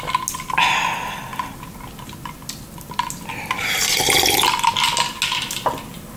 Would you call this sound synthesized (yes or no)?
no